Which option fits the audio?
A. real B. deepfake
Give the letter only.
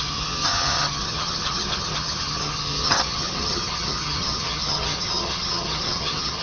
B